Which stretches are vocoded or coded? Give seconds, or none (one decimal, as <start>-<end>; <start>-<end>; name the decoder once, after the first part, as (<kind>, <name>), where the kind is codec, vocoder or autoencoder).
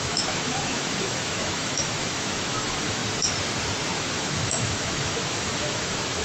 0.0-3.0 (autoencoder, DAC-VAE); 3.9-6.2